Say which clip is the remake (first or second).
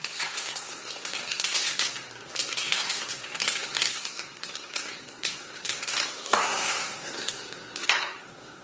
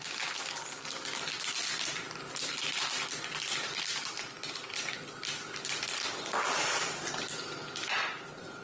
first